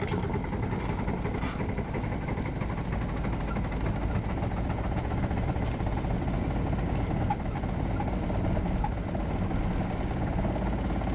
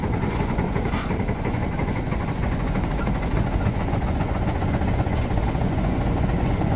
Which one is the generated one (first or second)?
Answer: second